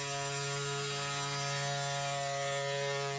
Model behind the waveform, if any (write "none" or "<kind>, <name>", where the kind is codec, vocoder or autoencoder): none